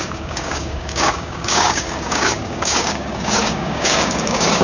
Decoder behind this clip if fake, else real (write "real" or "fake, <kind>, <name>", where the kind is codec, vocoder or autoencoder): fake, codec, DAC